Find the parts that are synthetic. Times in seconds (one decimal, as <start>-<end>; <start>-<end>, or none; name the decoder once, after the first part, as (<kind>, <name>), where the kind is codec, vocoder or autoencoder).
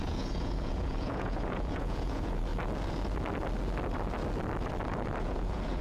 0.0-2.5 (vocoder, Vocos); 5.2-5.8